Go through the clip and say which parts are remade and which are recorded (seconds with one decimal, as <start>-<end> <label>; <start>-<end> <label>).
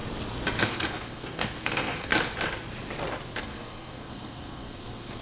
0.0-0.6 recorded; 0.6-2.1 remade; 2.1-3.4 recorded; 3.4-5.2 remade